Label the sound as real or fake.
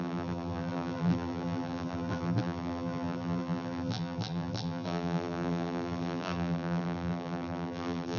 fake